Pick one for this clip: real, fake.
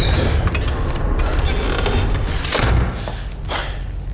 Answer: real